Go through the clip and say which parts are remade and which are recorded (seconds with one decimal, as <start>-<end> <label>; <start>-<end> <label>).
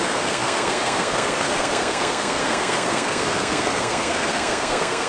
0.0-5.1 remade